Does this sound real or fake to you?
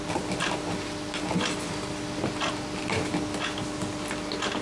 real